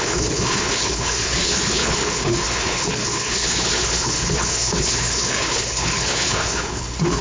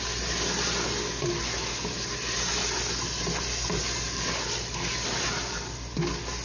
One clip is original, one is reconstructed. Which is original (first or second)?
second